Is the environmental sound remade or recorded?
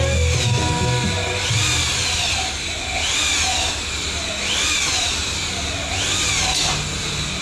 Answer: recorded